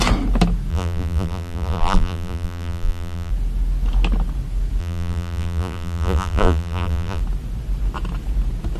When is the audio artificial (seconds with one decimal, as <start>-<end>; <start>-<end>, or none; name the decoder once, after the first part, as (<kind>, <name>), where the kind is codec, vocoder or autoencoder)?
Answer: 0.7-3.3 (vocoder, BigVGAN v2); 4.8-7.2